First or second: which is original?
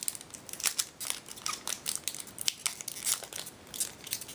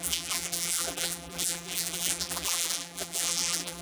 first